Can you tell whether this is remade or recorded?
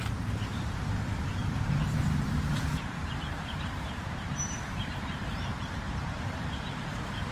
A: remade